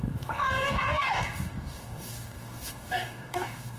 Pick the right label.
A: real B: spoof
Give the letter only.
B